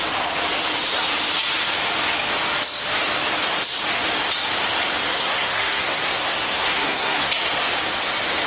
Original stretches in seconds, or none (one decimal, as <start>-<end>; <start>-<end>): 0.0-5.1; 7.4-8.5

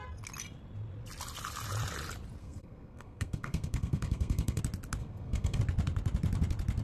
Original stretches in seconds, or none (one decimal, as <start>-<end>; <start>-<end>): 0.0-2.4; 4.6-5.0; 5.6-6.8

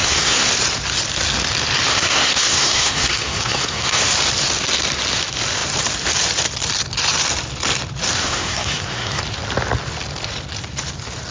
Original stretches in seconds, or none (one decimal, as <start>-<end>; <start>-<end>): 0.5-1.9; 4.0-8.2; 9.2-11.3

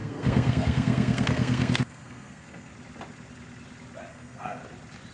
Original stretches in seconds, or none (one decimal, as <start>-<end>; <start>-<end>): 2.7-4.1; 4.6-5.1

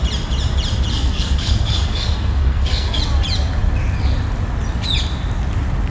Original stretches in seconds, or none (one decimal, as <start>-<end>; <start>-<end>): 0.0-0.9; 3.0-5.9

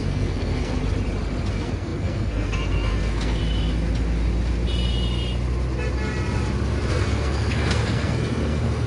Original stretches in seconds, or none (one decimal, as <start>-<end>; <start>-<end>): 0.8-1.5; 3.4-6.9